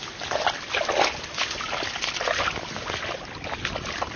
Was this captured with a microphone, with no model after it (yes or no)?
yes